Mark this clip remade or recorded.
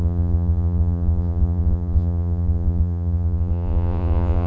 remade